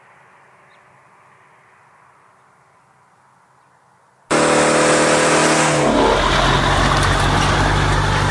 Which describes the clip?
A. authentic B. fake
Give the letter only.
A